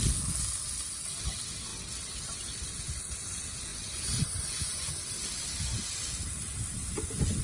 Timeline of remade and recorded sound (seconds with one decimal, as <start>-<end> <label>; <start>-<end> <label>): 0.0-3.7 recorded; 3.7-4.9 remade; 4.9-7.4 recorded